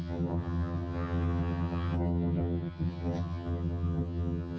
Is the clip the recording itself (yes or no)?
no